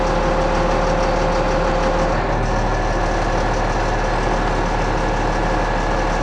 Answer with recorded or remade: recorded